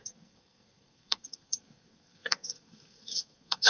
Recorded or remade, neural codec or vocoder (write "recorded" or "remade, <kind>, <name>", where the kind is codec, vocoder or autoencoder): remade, codec, SNAC